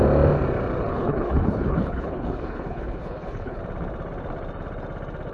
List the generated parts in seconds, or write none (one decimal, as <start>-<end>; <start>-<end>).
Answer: 0.9-3.6